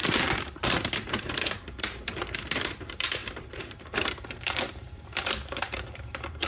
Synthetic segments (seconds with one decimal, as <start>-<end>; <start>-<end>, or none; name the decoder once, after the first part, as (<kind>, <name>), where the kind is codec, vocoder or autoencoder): 0.0-6.5 (vocoder, BigVGAN v2)